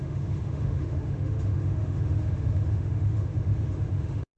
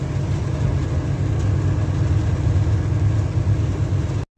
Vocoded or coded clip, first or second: first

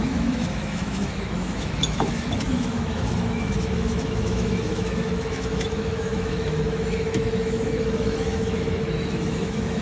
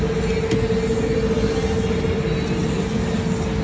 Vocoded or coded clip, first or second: first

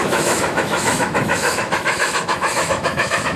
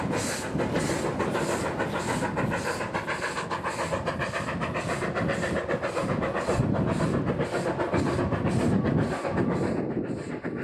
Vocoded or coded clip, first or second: first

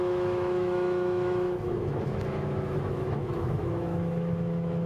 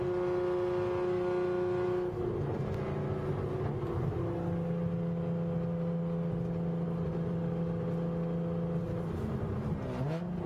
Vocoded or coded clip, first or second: first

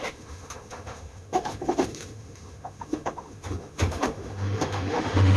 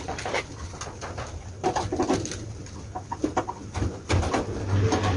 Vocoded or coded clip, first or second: first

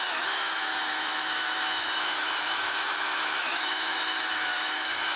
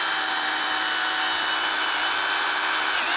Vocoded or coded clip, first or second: first